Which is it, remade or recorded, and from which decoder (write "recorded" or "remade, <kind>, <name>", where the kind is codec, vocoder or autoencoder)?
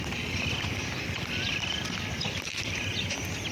recorded